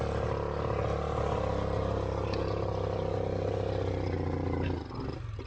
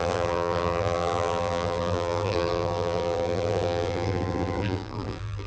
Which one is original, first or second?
first